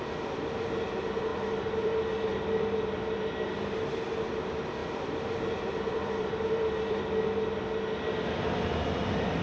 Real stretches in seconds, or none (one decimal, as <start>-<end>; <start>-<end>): 0.0-1.3; 3.2-4.8; 7.0-9.4